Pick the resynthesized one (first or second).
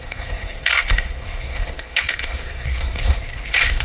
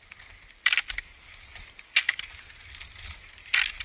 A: first